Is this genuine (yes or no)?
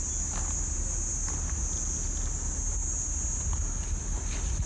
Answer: yes